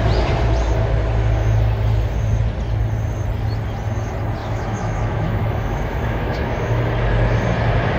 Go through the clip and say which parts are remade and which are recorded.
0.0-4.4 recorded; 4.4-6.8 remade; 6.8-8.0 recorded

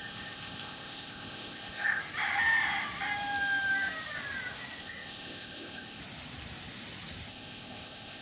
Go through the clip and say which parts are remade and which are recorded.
0.0-2.0 remade; 2.0-4.8 recorded; 4.8-6.0 remade; 6.0-7.3 recorded; 7.3-8.2 remade

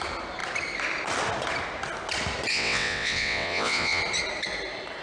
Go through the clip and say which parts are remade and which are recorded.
0.0-2.5 recorded; 2.5-4.0 remade; 4.0-5.0 recorded

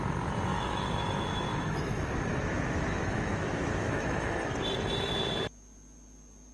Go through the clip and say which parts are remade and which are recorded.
0.0-0.5 recorded; 0.5-4.4 remade; 4.4-6.5 recorded

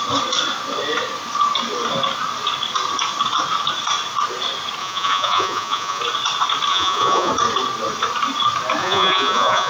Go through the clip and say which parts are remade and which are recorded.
0.0-4.8 recorded; 4.8-6.0 remade; 6.0-6.7 recorded; 6.7-7.3 remade; 7.3-8.8 recorded; 8.8-9.7 remade